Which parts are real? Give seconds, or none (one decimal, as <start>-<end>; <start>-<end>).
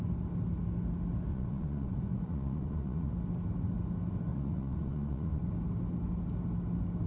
0.0-1.3; 3.1-4.3; 5.5-7.1